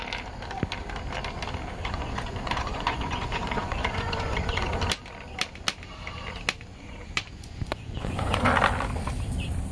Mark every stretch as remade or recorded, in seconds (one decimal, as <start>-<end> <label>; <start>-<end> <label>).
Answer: 0.0-1.8 recorded; 1.8-4.7 remade; 4.7-6.7 recorded; 6.7-8.5 remade; 8.5-9.7 recorded

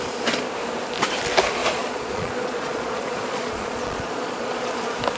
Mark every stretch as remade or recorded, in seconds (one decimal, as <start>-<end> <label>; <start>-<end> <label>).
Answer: 0.0-1.6 recorded; 1.6-4.7 remade; 4.7-5.2 recorded

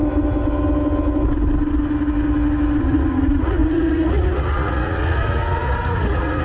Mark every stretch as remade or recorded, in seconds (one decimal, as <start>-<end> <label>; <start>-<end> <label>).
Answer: 0.0-2.8 recorded; 2.8-6.4 remade

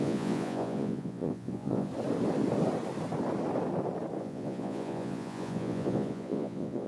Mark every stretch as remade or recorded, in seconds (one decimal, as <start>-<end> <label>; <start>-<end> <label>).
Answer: 0.0-1.9 remade; 1.9-4.2 recorded; 4.2-6.9 remade

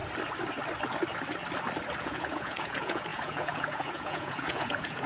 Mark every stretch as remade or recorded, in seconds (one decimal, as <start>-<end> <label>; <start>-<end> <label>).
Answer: 0.0-2.0 recorded; 2.0-5.1 remade

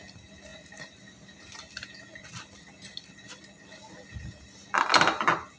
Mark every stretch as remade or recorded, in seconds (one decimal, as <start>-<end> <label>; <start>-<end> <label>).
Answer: 0.0-5.6 recorded

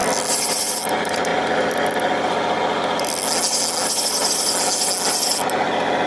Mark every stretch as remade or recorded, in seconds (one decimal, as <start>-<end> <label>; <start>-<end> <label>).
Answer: 0.0-6.1 recorded

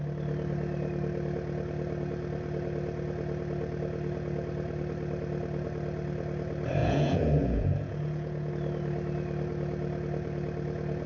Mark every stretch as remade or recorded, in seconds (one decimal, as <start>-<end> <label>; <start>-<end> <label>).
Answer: 0.0-6.8 recorded; 6.8-8.5 remade; 8.5-11.1 recorded